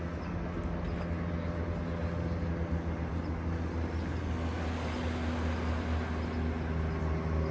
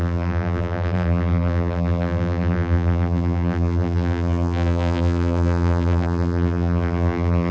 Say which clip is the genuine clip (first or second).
first